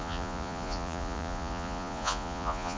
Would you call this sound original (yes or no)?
no